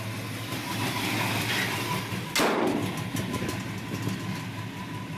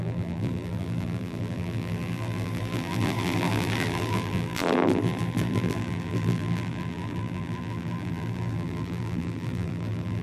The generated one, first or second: second